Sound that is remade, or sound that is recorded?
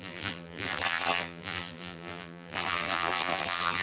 remade